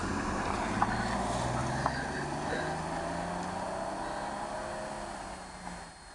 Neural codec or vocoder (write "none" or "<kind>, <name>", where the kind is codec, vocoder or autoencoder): none